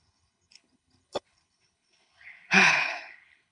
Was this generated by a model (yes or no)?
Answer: yes